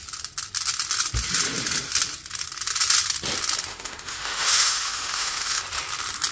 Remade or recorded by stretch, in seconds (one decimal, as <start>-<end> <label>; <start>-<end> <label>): 0.0-3.7 recorded; 3.7-5.6 remade; 5.6-6.3 recorded